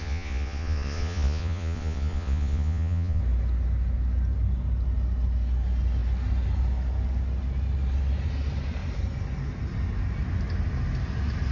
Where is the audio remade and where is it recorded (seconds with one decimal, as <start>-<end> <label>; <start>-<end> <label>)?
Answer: 0.0-3.2 remade; 3.2-11.5 recorded